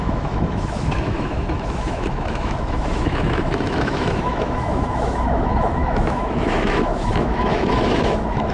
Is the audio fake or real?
fake